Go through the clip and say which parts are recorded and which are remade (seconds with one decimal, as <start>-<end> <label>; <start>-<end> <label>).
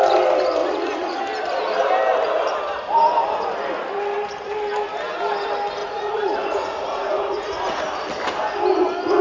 0.0-0.6 recorded; 0.6-1.2 remade; 1.2-5.8 recorded; 5.8-7.8 remade; 7.8-9.2 recorded